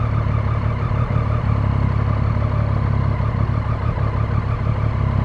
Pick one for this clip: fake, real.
real